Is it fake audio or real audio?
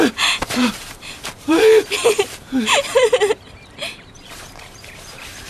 fake